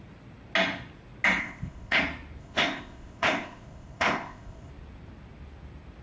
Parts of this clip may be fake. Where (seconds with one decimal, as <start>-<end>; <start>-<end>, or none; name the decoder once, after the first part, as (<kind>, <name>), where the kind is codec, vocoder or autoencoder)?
1.4-2.0 (codec, ZipCodec); 2.4-4.7